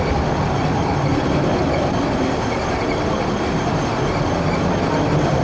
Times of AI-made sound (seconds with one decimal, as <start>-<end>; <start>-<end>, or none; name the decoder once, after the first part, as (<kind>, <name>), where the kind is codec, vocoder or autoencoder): none